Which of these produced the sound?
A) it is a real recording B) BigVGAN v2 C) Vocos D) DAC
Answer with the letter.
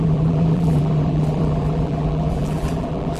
B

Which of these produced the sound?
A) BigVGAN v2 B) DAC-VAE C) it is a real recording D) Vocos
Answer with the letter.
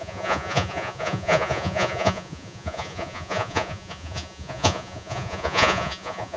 D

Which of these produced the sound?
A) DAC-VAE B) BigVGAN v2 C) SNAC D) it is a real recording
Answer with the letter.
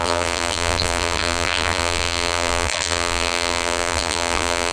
B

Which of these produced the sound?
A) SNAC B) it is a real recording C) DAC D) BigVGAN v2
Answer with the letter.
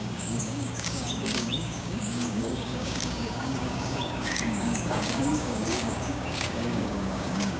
C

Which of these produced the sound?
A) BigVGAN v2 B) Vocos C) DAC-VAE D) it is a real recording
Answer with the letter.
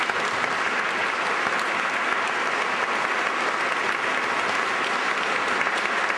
D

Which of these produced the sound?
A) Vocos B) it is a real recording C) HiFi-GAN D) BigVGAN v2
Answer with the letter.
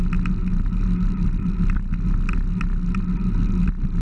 B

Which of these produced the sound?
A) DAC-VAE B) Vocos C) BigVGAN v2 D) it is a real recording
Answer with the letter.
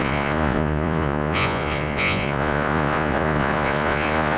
B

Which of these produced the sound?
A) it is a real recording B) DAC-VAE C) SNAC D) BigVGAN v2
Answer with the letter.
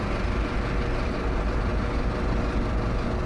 A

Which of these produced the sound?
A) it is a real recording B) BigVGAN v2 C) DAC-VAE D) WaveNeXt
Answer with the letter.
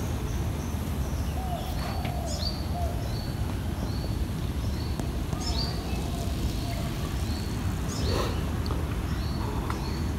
A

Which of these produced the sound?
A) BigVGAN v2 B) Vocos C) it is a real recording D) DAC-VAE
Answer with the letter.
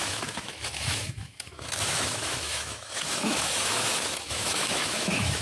D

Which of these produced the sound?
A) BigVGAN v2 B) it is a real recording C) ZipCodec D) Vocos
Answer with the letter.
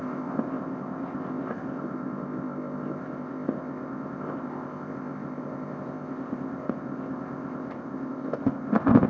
C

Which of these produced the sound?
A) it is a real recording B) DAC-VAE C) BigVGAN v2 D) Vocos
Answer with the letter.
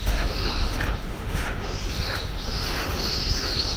B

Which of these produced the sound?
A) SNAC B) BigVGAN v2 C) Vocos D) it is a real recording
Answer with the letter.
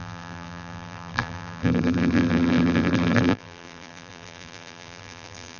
B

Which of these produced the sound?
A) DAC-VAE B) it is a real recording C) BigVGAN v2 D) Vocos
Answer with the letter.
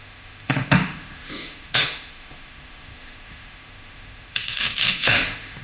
A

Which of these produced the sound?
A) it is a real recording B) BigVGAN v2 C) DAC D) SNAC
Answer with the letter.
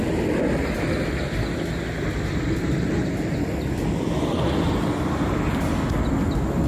A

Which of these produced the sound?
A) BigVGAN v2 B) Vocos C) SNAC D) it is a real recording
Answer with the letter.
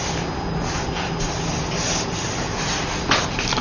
D